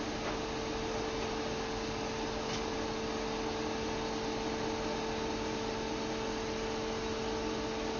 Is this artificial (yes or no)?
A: no